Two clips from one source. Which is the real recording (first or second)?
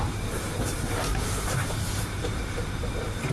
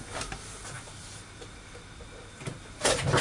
second